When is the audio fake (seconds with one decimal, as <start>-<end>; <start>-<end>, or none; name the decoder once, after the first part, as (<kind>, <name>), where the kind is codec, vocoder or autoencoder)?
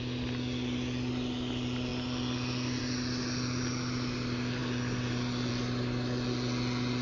none